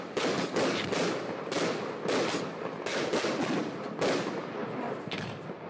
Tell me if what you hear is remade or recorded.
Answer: recorded